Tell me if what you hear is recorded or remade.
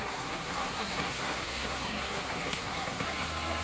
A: remade